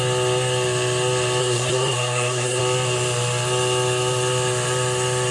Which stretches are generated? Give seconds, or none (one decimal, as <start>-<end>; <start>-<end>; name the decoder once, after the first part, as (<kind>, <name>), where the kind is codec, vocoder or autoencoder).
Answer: 1.4-2.6 (codec, SNAC)